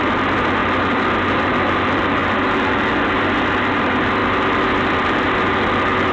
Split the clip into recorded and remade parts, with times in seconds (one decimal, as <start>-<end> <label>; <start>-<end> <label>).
0.0-6.1 recorded